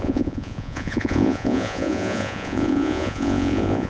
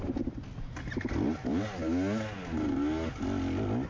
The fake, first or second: first